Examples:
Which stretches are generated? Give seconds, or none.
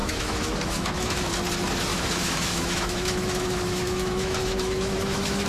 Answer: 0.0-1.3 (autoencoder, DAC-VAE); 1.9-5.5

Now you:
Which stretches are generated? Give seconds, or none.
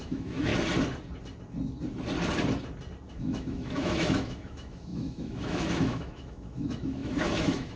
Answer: 0.0-0.5 (autoencoder, DAC-VAE); 3.1-7.8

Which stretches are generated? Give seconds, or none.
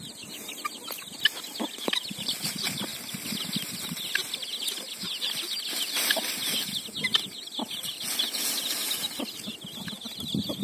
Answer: none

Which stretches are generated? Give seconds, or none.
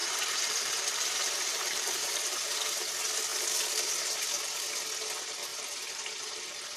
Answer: 0.0-2.3 (vocoder, BigVGAN v2); 5.5-6.1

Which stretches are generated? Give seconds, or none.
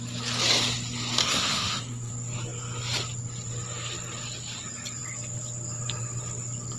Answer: 1.2-2.1 (codec, SNAC)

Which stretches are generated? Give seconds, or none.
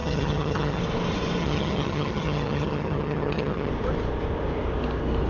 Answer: 0.0-0.8 (vocoder, HiFi-GAN); 1.4-3.7